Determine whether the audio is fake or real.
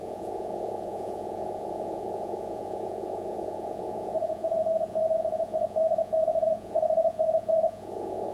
fake